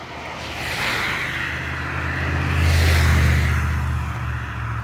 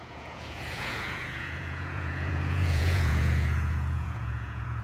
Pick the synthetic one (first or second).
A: second